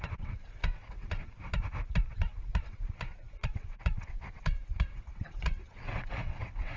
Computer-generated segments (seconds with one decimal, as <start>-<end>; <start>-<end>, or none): 0.0-1.2; 2.1-6.8